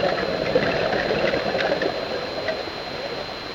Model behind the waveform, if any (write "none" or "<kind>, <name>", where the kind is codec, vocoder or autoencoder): none